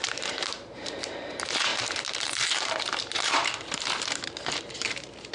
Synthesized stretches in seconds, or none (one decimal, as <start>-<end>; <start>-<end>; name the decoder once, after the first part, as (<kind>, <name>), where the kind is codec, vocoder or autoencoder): 0.0-5.3 (vocoder, BigVGAN v2)